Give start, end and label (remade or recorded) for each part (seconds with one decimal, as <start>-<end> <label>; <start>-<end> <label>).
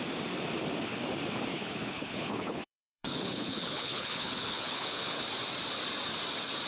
0.0-1.5 recorded; 1.5-5.2 remade; 5.2-6.7 recorded